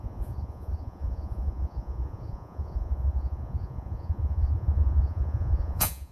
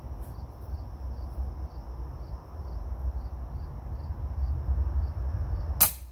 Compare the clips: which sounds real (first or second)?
second